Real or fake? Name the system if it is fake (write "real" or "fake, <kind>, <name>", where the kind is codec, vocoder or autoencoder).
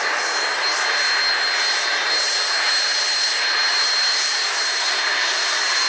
real